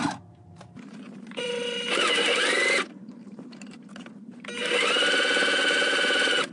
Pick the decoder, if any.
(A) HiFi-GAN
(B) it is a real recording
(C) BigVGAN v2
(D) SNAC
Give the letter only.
C